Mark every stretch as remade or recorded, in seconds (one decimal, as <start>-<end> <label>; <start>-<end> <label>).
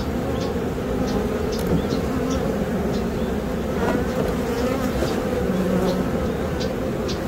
0.0-7.3 recorded